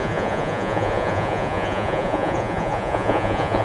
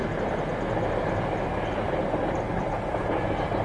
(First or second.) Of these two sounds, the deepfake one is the first